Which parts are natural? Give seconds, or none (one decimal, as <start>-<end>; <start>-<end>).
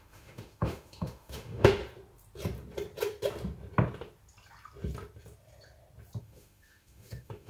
1.8-6.2